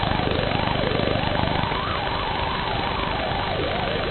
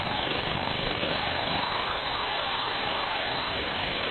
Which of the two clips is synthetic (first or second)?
second